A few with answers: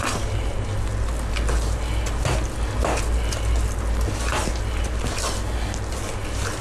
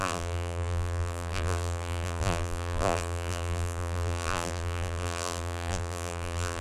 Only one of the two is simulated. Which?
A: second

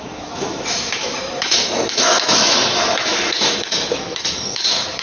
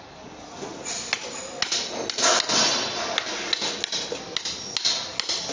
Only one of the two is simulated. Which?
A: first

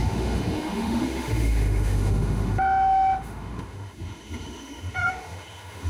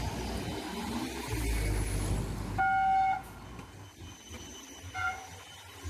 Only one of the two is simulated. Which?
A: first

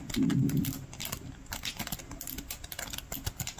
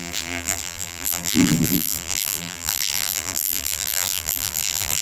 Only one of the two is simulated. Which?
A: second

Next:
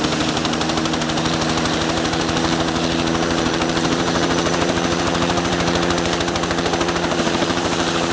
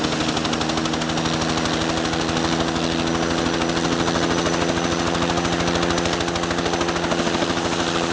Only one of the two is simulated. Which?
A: first